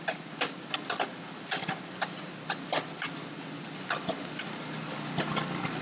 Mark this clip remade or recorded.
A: recorded